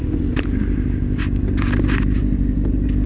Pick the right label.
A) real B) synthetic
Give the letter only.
A